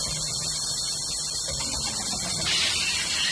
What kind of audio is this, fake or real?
real